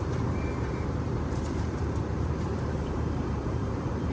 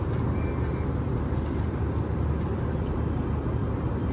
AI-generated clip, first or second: first